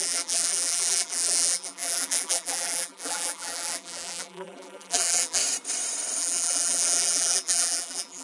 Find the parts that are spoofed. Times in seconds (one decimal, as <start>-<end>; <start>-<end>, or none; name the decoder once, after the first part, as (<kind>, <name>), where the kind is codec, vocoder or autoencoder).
0.0-5.4 (vocoder, BigVGAN v2); 6.2-8.2